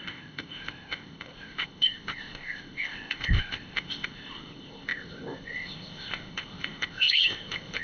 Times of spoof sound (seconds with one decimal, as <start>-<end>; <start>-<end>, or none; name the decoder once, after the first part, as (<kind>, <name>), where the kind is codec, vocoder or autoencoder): 0.0-7.8 (codec, ZipCodec)